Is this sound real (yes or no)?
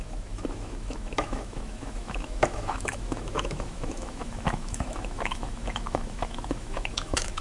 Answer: no